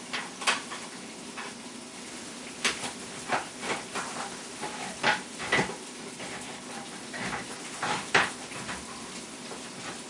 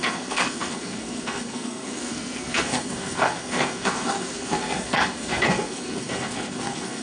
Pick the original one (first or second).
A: first